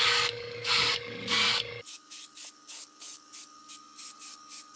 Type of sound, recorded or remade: remade